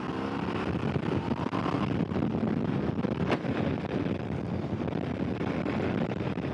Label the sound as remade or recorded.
recorded